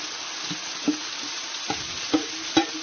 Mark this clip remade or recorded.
recorded